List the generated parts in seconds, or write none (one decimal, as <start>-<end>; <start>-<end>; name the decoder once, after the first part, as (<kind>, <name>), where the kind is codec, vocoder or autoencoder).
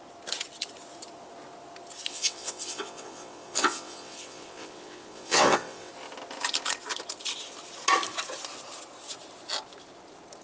2.1-5.9 (vocoder, WaveNeXt)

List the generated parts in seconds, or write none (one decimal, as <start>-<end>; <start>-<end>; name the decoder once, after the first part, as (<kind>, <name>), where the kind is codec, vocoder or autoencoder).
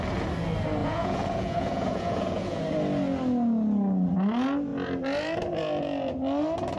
0.8-2.6 (vocoder, Vocos)